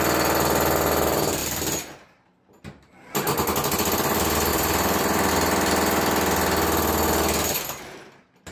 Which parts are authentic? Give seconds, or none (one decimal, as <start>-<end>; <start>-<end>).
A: 0.0-4.5; 5.3-8.5

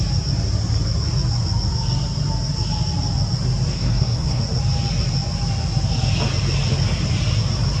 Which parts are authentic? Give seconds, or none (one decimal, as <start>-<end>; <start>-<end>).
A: 0.0-3.7; 4.4-7.8

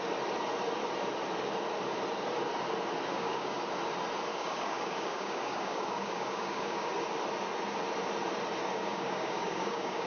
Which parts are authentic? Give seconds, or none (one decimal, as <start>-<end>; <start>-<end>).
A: 0.0-3.1; 3.6-4.3; 6.9-8.7

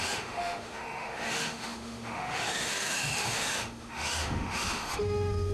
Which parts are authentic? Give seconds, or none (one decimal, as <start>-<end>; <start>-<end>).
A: none

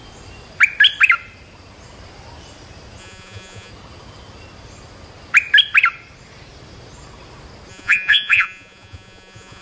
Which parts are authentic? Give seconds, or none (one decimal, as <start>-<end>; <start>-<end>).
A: 0.0-3.0; 3.7-7.7